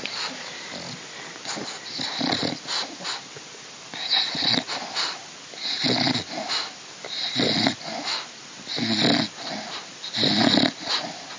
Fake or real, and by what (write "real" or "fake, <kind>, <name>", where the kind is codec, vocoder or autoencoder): real